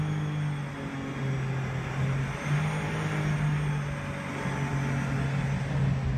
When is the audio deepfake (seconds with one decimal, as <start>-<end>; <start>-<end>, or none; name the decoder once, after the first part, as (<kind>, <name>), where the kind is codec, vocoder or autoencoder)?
none